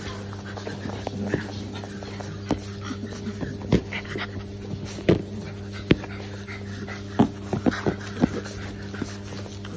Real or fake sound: real